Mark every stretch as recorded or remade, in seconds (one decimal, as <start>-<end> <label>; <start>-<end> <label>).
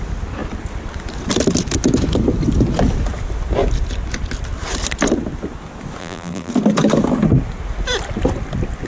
0.0-6.0 recorded; 6.0-6.5 remade; 6.5-8.9 recorded